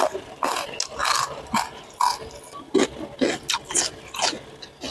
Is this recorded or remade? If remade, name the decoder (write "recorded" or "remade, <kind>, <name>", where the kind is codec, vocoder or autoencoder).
recorded